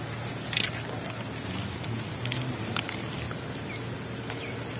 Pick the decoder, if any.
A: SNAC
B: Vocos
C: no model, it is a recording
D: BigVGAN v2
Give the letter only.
C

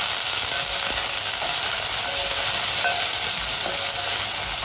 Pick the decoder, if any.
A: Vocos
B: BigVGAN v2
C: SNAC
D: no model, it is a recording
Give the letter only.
D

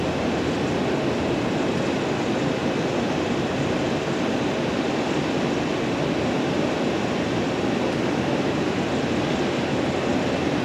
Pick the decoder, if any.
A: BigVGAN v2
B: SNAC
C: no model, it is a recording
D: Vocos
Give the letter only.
A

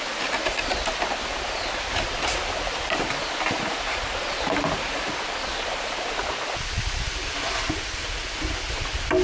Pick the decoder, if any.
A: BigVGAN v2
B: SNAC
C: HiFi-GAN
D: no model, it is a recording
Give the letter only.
D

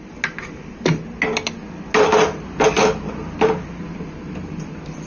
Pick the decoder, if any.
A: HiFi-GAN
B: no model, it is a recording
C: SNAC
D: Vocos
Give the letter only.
B